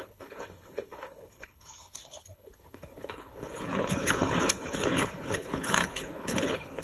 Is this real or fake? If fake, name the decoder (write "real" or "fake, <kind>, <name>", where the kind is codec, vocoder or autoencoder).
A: fake, codec, HILCodec